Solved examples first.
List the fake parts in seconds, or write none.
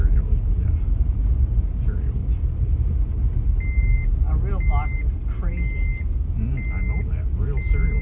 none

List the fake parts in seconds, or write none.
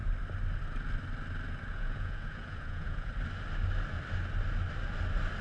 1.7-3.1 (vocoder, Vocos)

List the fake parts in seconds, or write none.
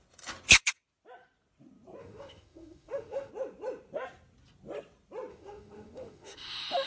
2.0-3.3 (autoencoder, DAC-VAE); 5.3-6.9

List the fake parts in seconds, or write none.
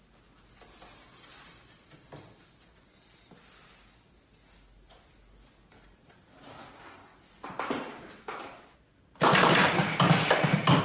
7.1-10.8 (vocoder, BigVGAN v2)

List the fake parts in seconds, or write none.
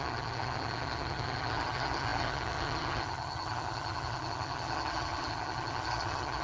0.0-6.4 (vocoder, HiFi-GAN)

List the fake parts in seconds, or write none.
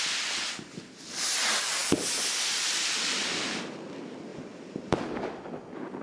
4.3-5.6 (vocoder, BigVGAN v2)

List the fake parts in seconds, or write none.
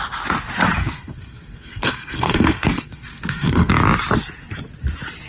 0.8-3.7 (codec, SNAC)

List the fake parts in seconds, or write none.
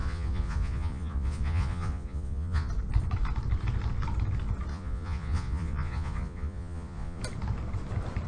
0.0-2.7 (vocoder, Vocos); 4.7-7.2